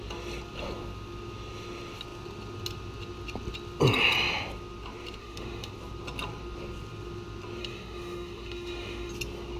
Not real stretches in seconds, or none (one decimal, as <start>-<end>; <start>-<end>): 5.2-5.7; 7.6-9.1